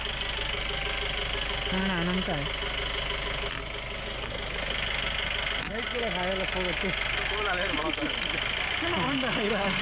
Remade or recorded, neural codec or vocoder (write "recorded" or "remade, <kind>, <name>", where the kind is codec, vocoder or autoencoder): recorded